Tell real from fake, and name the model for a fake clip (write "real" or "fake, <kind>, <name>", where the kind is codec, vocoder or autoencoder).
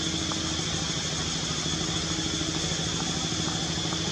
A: real